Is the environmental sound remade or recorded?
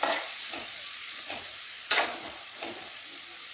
remade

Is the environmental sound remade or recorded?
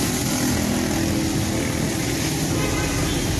recorded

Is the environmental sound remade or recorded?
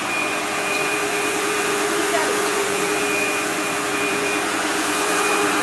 remade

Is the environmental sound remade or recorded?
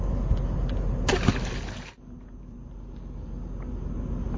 recorded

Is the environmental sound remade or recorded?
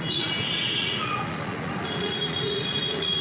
remade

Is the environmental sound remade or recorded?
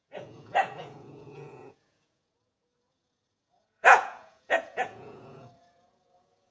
remade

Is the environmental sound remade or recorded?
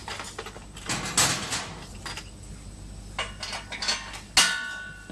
recorded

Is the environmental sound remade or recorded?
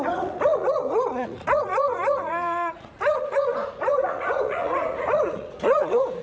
remade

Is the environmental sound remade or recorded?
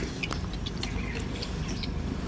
recorded